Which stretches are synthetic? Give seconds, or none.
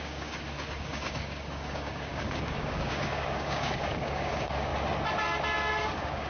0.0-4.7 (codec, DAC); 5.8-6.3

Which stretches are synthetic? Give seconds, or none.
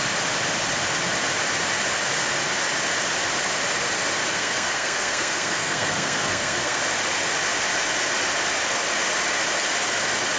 4.2-6.8 (codec, SNAC)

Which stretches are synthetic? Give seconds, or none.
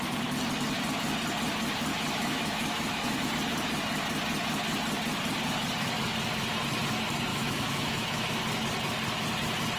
1.9-3.3 (autoencoder, DAC-VAE); 7.3-8.3